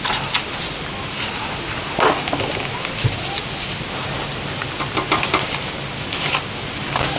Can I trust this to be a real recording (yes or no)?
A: yes